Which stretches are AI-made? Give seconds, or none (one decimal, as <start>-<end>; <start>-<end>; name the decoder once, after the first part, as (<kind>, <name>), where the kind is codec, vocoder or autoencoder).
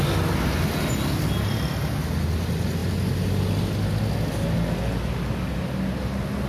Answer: none